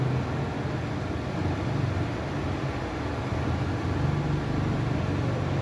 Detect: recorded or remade recorded